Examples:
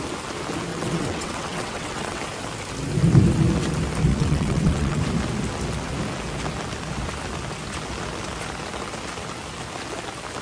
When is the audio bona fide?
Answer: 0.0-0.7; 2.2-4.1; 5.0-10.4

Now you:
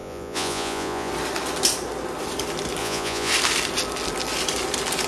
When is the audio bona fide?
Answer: 1.1-2.8; 3.3-5.1

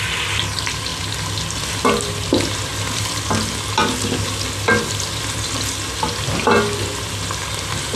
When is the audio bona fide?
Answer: 0.0-8.0

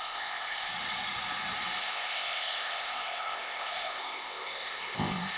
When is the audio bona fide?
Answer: 0.7-1.8

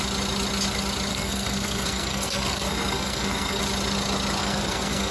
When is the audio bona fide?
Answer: 0.0-1.1; 3.6-4.4

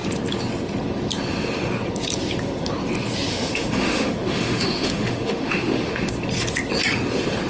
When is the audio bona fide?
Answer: 0.0-3.3; 6.1-7.5

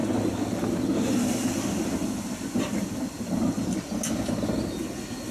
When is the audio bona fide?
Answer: 0.0-5.3